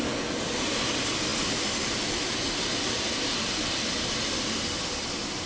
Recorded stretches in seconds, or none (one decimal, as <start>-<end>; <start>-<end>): 0.0-5.5